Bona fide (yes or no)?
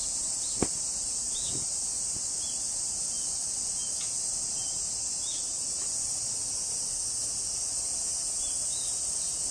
yes